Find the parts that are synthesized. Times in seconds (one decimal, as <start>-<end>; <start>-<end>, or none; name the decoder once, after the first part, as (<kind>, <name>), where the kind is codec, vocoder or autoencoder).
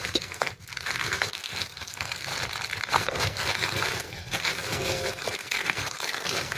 0.0-2.3 (codec, SNAC); 2.9-6.6